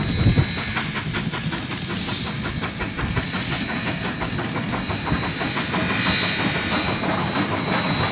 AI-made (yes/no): no